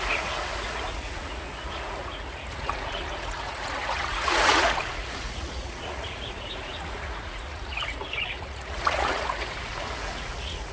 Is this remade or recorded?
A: remade